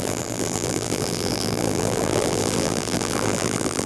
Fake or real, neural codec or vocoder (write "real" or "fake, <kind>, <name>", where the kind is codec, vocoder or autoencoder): fake, vocoder, BigVGAN v2